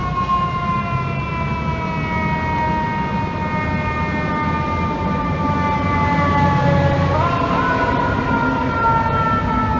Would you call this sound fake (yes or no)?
no